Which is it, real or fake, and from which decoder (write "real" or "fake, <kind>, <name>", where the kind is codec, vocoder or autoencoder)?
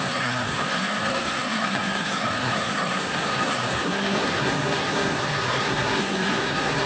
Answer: fake, codec, SNAC